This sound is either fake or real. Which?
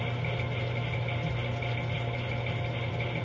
real